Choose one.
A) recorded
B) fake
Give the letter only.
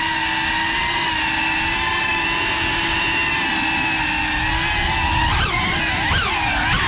A